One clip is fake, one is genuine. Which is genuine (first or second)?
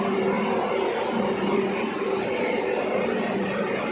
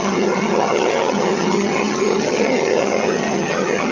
first